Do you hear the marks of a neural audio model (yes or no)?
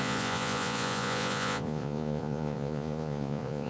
yes